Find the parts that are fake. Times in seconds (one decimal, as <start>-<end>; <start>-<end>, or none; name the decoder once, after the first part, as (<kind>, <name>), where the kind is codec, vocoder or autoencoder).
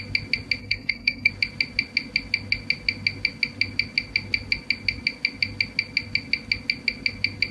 0.6-1.3 (codec, SNAC)